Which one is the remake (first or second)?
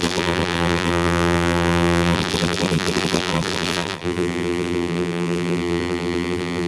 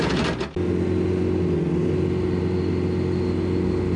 first